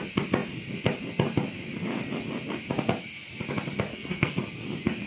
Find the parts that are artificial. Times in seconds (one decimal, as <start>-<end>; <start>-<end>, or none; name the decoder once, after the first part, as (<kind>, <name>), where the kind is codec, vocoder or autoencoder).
3.9-4.4 (codec, SNAC)